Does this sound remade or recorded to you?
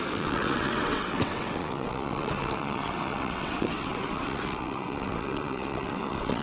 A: remade